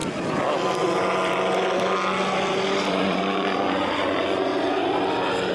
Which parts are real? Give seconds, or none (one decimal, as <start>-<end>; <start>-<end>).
0.0-2.9; 4.5-5.5